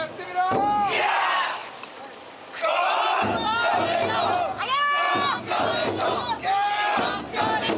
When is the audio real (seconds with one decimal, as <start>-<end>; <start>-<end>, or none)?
0.0-7.8